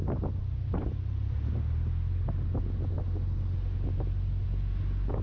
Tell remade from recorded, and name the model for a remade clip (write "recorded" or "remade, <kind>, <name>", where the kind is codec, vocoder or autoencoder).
recorded